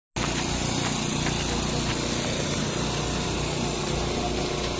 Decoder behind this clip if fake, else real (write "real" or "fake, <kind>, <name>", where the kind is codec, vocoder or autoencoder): real